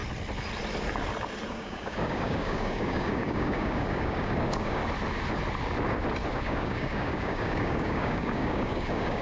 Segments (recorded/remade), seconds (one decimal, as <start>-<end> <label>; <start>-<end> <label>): 0.0-1.5 recorded; 1.5-4.8 remade; 4.8-6.3 recorded; 6.3-9.2 remade